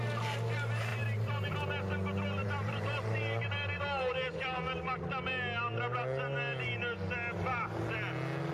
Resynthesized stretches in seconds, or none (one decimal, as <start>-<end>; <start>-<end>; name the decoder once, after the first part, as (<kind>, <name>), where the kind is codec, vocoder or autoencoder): 0.9-1.5 (vocoder, BigVGAN v2); 2.4-4.1